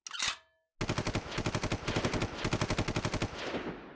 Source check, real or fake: real